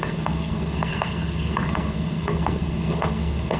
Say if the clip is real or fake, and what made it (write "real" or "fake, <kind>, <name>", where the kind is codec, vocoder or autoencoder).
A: fake, codec, SNAC